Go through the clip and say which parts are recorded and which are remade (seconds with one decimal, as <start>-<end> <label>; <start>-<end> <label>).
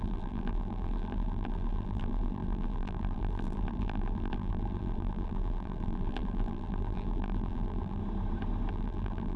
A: 0.0-8.0 remade; 8.0-8.7 recorded; 8.7-9.4 remade